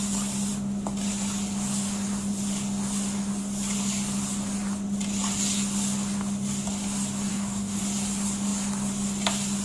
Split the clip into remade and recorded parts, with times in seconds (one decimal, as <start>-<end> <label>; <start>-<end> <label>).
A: 0.0-7.3 recorded; 7.3-7.8 remade; 7.8-9.6 recorded